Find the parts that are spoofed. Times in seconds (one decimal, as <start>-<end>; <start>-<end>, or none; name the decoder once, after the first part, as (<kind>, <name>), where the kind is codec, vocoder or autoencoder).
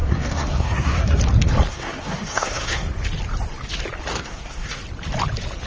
0.0-1.2 (codec, SNAC); 1.7-2.9; 4.1-4.8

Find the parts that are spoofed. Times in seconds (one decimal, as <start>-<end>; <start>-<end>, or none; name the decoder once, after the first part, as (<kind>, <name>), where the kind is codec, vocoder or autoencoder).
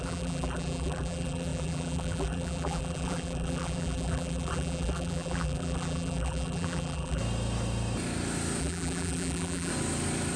0.0-7.2 (vocoder, BigVGAN v2); 8.6-9.7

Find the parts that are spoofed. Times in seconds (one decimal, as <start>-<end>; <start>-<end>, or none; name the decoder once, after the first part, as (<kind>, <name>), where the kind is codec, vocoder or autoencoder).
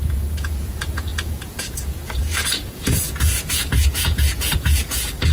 0.0-5.3 (vocoder, Vocos)